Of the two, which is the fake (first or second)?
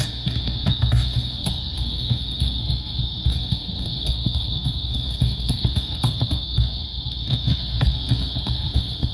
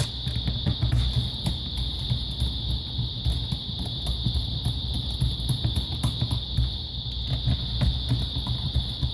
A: first